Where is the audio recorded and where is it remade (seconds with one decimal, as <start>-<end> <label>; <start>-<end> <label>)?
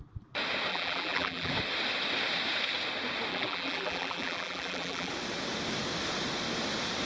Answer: 0.0-0.7 recorded; 0.7-1.5 remade; 1.5-3.3 recorded; 3.3-5.1 remade; 5.1-7.1 recorded